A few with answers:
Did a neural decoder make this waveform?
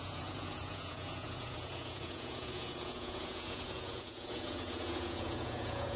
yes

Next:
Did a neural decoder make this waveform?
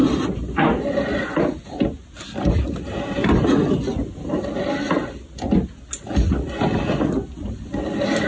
no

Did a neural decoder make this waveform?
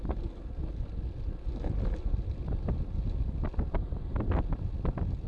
no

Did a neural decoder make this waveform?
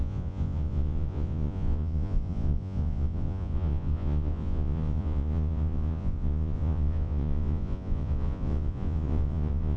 yes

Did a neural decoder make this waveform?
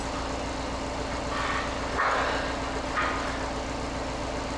no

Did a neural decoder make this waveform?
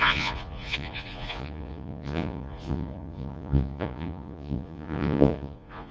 yes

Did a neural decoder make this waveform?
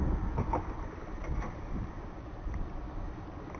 no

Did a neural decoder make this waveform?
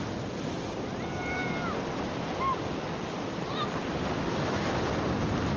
no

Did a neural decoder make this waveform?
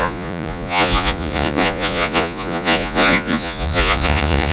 yes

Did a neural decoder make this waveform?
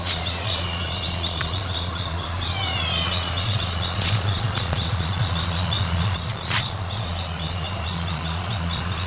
yes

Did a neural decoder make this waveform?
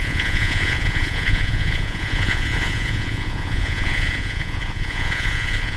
yes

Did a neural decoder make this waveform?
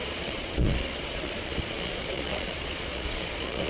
yes